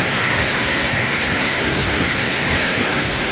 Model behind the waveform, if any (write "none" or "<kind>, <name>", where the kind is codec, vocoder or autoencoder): codec, SNAC